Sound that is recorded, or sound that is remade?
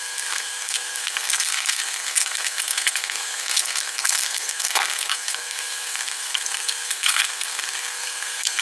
remade